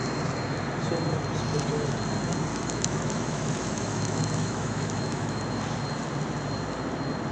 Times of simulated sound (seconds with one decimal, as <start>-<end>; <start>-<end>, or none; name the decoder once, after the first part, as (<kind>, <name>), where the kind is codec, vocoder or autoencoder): 2.5-5.4 (autoencoder, DAC-VAE)